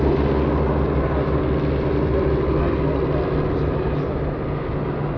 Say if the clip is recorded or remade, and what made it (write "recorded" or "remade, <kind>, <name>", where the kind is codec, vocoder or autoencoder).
recorded